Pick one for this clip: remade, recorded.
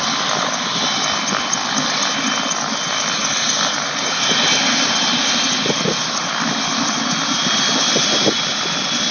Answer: recorded